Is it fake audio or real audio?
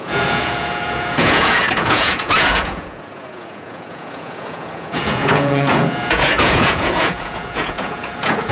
fake